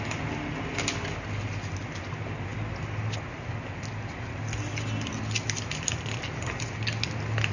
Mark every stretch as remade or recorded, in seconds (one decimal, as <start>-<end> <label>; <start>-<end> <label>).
0.0-7.5 recorded

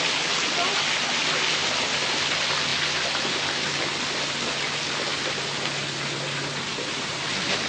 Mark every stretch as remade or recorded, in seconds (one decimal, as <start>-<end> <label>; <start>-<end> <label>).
0.0-7.7 recorded

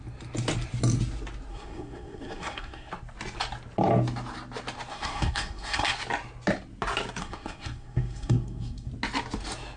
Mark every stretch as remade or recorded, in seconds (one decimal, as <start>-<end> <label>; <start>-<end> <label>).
0.0-1.5 recorded; 1.5-2.9 remade; 2.9-4.9 recorded; 4.9-5.9 remade; 5.9-7.2 recorded; 7.2-8.9 remade; 8.9-9.8 recorded

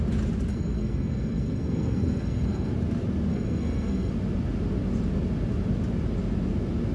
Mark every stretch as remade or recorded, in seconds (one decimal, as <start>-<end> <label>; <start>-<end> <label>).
0.0-0.5 recorded; 0.5-2.7 remade; 2.7-3.3 recorded; 3.3-4.1 remade; 4.1-6.9 recorded

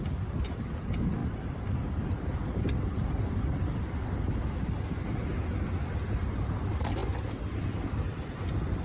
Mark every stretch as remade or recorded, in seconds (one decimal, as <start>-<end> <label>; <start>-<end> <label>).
0.0-8.8 recorded

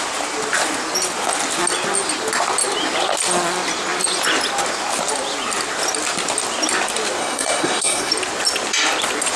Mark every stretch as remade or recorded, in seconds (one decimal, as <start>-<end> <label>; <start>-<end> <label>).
0.0-7.2 recorded; 7.2-8.1 remade; 8.1-9.4 recorded

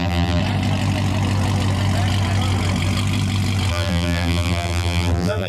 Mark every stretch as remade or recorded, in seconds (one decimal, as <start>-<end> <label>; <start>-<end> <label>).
0.0-0.4 remade; 0.4-3.7 recorded; 3.7-5.5 remade